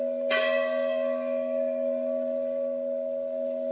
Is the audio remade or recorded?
remade